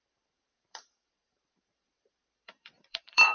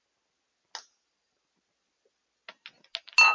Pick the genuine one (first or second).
second